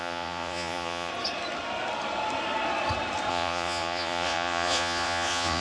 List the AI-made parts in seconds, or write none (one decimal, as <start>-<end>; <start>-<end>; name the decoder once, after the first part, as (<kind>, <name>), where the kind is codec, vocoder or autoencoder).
0.0-1.1 (vocoder, Vocos); 3.3-5.6